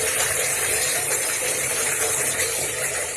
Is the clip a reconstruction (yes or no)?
yes